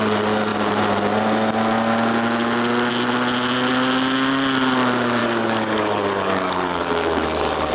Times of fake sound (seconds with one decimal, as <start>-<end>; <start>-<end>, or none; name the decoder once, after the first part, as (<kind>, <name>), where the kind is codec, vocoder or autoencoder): 5.2-7.7 (codec, DAC)